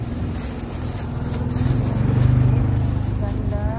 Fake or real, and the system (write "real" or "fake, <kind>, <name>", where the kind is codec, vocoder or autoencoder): real